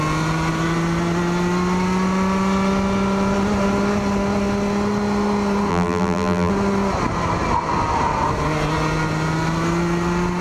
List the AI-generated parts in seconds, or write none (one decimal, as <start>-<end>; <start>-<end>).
5.7-6.5